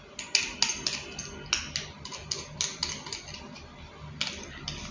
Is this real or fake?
real